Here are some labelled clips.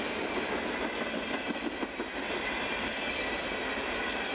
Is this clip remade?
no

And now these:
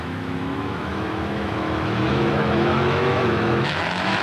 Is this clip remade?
yes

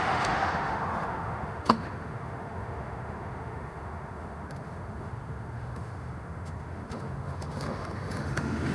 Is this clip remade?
yes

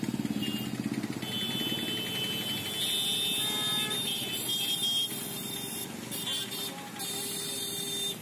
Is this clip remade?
no